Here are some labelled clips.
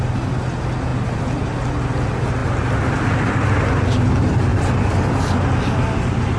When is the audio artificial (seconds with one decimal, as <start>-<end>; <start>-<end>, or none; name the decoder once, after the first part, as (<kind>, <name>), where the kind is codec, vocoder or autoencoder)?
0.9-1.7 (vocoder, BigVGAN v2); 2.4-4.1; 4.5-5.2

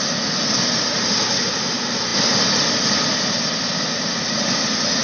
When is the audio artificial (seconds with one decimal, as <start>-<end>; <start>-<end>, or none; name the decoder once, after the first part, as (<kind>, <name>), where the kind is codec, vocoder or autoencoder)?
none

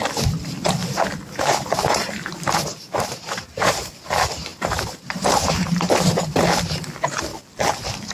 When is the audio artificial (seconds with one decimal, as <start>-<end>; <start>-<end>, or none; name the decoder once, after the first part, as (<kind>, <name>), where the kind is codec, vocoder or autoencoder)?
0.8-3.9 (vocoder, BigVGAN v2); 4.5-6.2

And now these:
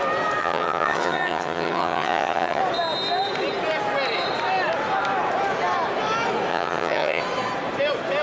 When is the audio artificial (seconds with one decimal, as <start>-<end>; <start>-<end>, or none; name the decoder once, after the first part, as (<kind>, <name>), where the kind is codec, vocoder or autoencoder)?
0.4-2.6 (vocoder, HiFi-GAN); 6.5-7.2